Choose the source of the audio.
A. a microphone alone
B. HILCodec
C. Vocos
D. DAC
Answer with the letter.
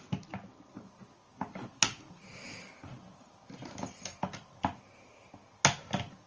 A